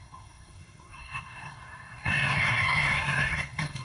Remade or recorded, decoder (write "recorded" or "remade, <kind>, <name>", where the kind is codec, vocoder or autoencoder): remade, codec, SNAC